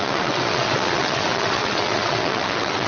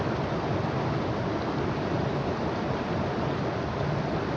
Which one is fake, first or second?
first